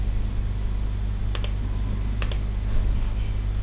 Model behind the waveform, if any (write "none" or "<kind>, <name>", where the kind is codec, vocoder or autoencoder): none